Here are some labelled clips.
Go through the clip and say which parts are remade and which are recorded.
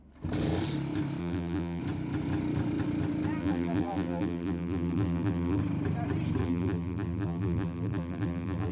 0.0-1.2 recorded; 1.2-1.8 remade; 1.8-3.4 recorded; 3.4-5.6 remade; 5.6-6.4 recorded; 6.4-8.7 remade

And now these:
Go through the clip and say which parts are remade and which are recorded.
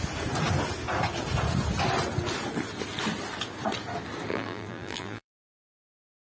0.0-4.3 recorded; 4.3-6.3 remade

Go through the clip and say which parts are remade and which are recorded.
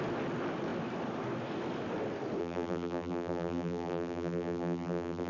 0.0-2.4 recorded; 2.4-5.3 remade